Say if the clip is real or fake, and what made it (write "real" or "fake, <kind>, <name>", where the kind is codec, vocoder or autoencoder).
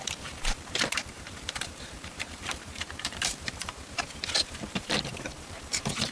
fake, vocoder, BigVGAN v2